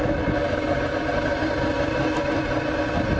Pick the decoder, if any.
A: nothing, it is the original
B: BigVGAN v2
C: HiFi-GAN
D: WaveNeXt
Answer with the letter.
A